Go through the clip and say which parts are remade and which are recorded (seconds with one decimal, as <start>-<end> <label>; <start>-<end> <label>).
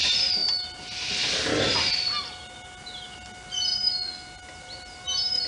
0.0-5.5 recorded